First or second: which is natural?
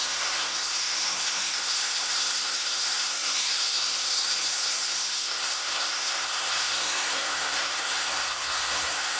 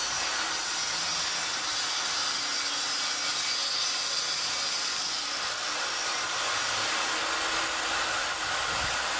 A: second